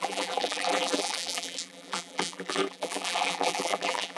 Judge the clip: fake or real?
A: fake